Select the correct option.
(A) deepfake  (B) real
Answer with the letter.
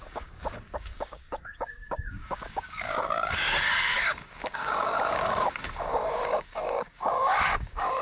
A